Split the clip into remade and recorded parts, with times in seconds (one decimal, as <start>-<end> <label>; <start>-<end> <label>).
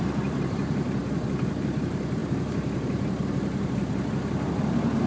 0.0-1.0 remade; 1.0-1.5 recorded; 1.5-5.1 remade